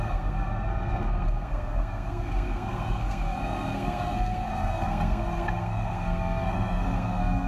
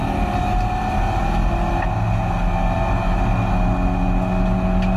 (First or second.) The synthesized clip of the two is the first